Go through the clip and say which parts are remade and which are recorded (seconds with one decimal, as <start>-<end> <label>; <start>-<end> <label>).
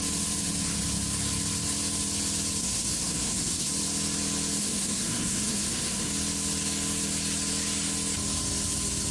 0.0-2.6 recorded; 2.6-3.7 remade; 3.7-4.6 recorded; 4.6-6.1 remade; 6.1-9.1 recorded